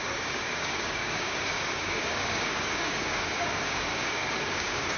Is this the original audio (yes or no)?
no